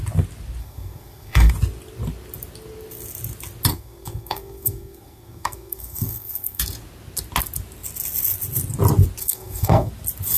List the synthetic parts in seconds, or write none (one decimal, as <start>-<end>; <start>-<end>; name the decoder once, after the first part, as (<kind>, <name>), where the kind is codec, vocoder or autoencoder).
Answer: 0.6-1.5 (codec, SNAC); 3.7-6.6; 9.2-9.9